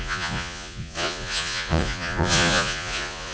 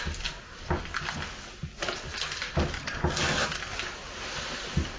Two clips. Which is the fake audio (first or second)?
first